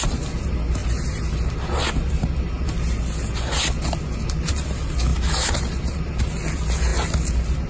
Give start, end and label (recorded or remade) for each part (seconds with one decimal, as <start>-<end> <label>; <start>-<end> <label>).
0.0-7.7 recorded